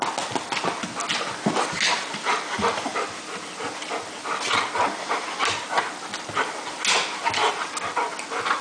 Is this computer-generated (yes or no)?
no